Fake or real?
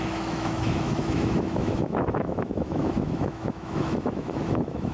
fake